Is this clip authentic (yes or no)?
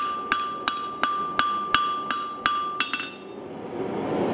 yes